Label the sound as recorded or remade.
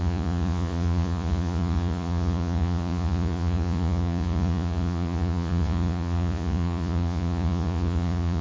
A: remade